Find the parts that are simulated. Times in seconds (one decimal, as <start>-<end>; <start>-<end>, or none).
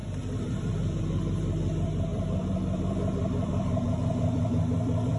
0.0-5.2